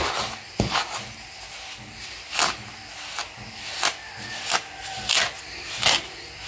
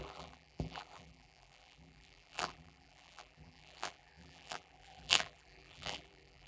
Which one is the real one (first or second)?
first